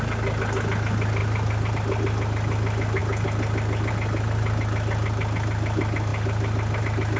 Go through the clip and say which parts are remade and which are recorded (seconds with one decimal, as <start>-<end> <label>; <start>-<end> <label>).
0.0-7.2 recorded